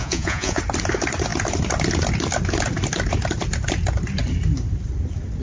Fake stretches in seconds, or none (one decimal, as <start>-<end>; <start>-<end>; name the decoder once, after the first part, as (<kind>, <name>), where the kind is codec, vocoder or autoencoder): 0.0-0.6 (vocoder, Vocos)